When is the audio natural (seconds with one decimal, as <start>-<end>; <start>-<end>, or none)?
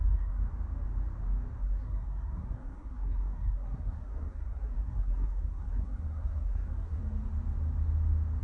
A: 0.4-1.6; 7.0-8.4